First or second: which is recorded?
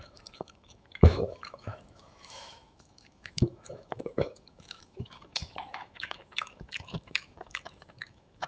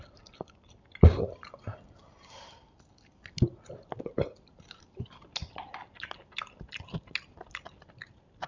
second